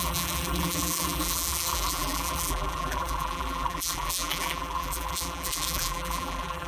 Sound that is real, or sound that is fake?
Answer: fake